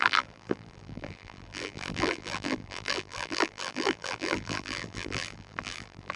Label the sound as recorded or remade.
remade